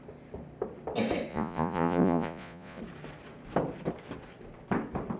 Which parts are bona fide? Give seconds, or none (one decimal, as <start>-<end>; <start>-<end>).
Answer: 0.0-1.3; 2.8-5.2